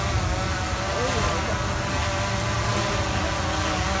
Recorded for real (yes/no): yes